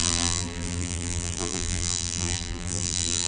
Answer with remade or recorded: remade